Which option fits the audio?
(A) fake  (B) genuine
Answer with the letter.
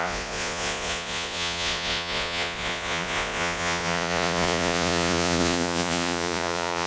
A